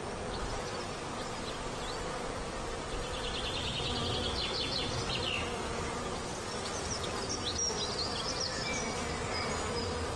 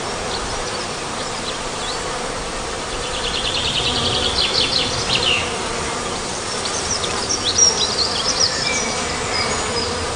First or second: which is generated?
second